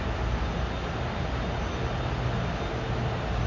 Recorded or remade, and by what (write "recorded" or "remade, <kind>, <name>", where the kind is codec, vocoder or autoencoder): recorded